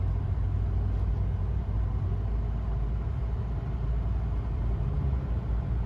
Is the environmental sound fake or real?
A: real